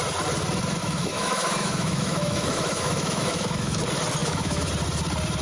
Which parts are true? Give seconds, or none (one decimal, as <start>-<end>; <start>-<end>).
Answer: 0.0-0.8; 3.8-4.2; 4.7-5.4